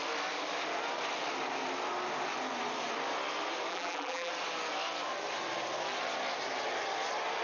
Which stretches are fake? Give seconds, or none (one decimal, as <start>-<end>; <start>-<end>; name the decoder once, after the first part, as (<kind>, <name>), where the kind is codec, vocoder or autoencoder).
3.7-4.3 (vocoder, BigVGAN v2)